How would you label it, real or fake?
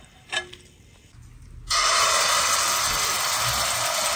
real